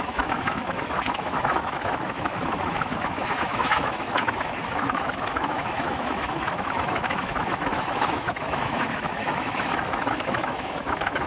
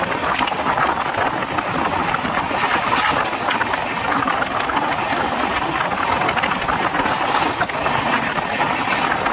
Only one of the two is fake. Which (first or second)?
first